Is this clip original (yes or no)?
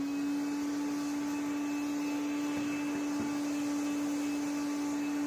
yes